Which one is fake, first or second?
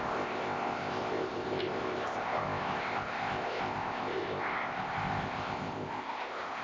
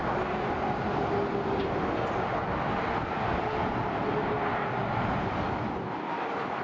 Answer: first